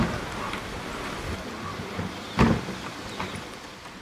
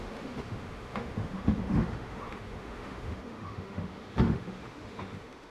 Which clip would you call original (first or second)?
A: first